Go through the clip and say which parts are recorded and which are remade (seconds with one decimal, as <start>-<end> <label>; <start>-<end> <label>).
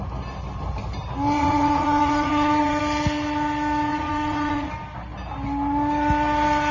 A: 0.0-1.4 recorded; 1.4-2.8 remade; 2.8-3.9 recorded; 3.9-4.7 remade; 4.7-6.7 recorded